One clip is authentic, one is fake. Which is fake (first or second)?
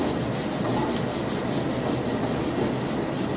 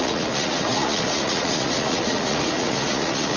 second